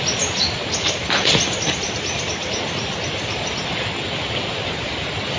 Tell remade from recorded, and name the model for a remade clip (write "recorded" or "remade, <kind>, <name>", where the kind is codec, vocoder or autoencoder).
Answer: recorded